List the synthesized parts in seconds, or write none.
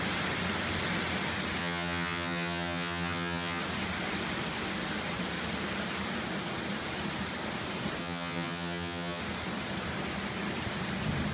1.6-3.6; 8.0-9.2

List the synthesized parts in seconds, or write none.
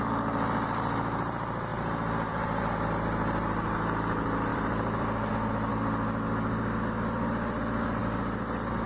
1.7-2.7; 4.5-5.3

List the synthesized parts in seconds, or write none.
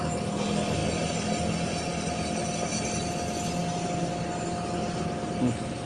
none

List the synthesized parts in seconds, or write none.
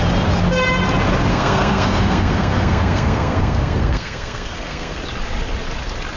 1.3-5.0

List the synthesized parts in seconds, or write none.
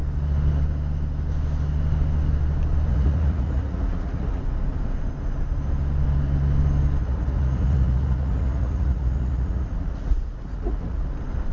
2.9-4.4; 7.0-11.1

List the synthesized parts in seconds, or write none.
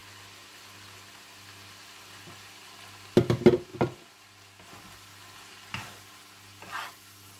none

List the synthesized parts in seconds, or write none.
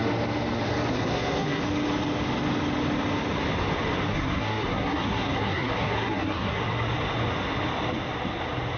0.9-1.6; 4.1-6.6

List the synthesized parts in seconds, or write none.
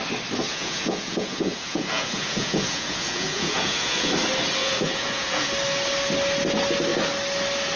0.5-4.1; 4.6-5.5